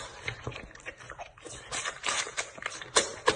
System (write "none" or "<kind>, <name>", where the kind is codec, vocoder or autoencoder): none